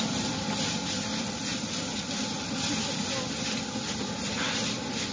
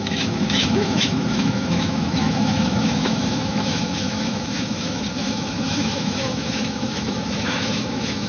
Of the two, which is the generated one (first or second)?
second